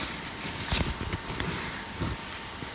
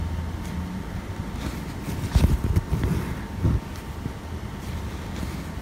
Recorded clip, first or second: second